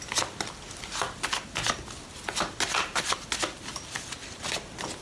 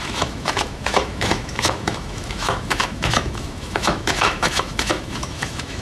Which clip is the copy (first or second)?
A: second